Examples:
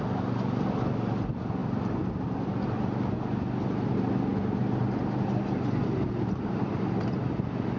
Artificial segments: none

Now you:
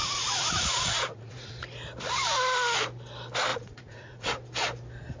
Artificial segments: 0.0-1.5 (vocoder, Vocos); 3.5-4.3

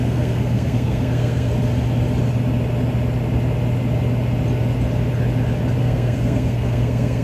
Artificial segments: 0.0-1.5 (codec, SNAC); 5.8-7.2

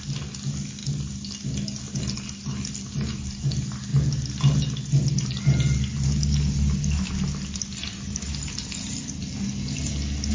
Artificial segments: none

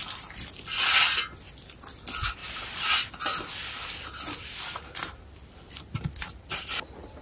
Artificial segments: 2.4-3.0 (vocoder, BigVGAN v2)

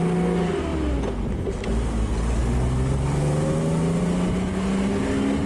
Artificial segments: none

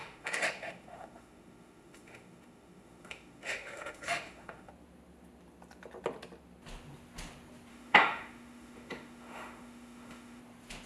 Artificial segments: 0.0-4.7 (autoencoder, DAC-VAE); 7.7-10.4

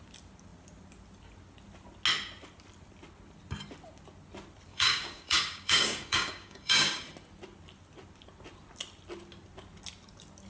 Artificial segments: 4.7-7.0 (codec, DAC)